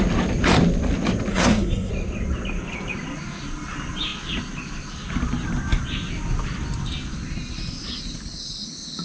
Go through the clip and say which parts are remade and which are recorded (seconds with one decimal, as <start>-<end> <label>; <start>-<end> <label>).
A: 0.0-1.3 recorded; 1.3-1.9 remade; 1.9-9.0 recorded